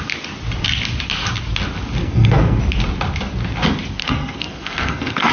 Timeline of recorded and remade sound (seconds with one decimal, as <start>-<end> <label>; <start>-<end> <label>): 0.0-2.0 recorded; 2.0-2.6 remade; 2.6-4.0 recorded; 4.0-5.3 remade